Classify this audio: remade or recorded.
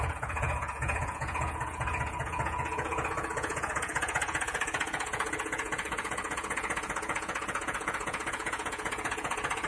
remade